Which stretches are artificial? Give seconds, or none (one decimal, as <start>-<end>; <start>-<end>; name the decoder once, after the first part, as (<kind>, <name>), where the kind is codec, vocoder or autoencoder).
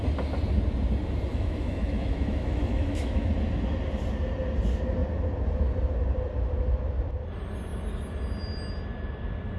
1.3-3.3 (autoencoder, DAC-VAE)